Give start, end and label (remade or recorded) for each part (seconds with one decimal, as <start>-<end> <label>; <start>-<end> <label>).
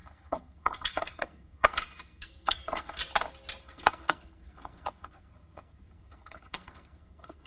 0.0-3.0 remade; 3.0-3.6 recorded; 3.6-7.5 remade